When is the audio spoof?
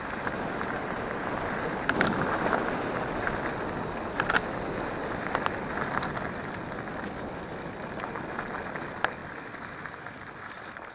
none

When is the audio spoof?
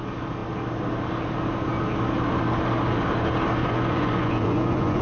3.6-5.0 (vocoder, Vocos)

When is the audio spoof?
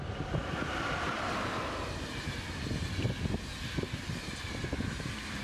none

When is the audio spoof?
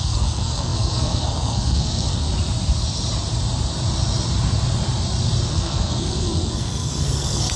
0.0-2.3 (codec, SNAC); 5.5-7.6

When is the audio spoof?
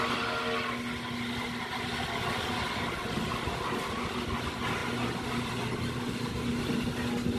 none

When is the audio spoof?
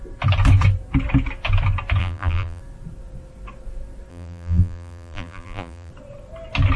2.0-2.6 (vocoder, BigVGAN v2); 4.1-5.9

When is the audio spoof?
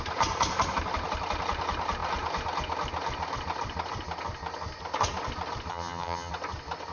5.7-6.3 (vocoder, HiFi-GAN)